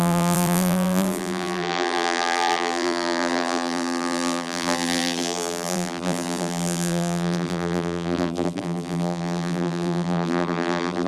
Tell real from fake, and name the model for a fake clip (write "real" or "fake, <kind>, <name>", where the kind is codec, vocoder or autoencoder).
fake, vocoder, BigVGAN v2